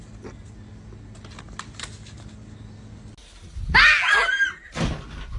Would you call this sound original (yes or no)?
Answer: yes